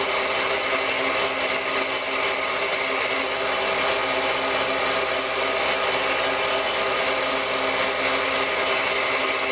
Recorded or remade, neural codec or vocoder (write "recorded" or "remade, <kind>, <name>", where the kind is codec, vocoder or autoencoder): recorded